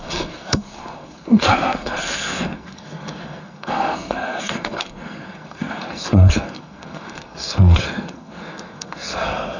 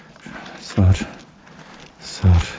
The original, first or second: second